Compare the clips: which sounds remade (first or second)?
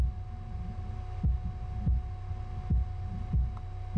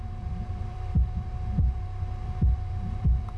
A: second